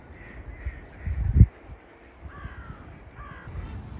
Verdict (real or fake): real